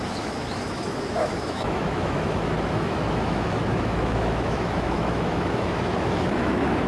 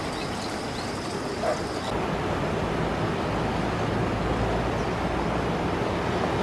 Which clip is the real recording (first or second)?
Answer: second